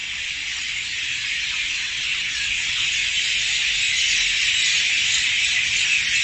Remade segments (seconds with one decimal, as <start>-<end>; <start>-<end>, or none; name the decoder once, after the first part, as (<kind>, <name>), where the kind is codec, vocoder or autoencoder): 0.0-0.7 (vocoder, WaveNeXt); 1.6-3.1